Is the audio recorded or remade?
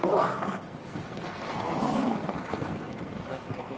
remade